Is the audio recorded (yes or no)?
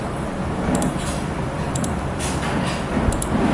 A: yes